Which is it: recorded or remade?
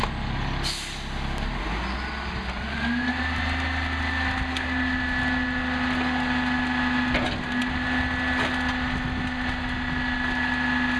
recorded